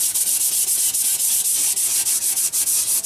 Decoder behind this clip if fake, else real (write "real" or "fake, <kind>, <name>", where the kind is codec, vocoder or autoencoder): real